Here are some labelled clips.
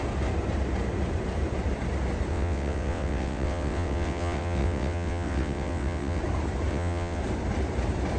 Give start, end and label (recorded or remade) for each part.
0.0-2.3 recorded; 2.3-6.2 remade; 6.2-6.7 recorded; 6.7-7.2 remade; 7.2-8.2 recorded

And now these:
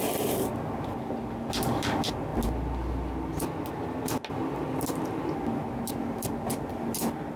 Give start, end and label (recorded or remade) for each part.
0.0-7.4 recorded

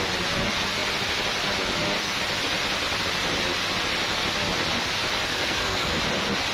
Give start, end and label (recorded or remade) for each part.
0.0-5.3 recorded; 5.3-6.0 remade; 6.0-6.5 recorded

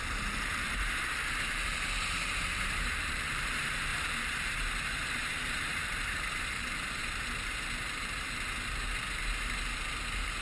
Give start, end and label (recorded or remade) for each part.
0.0-7.0 remade; 7.0-10.4 recorded

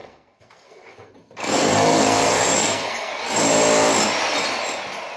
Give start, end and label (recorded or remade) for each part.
0.0-3.1 remade; 3.1-5.2 recorded

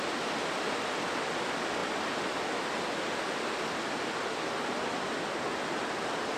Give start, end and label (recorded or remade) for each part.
0.0-6.4 recorded

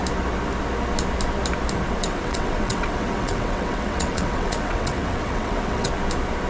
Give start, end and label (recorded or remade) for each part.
0.0-2.0 recorded; 2.0-5.9 remade; 5.9-6.5 recorded

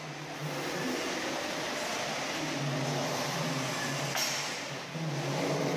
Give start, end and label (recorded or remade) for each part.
0.0-5.8 recorded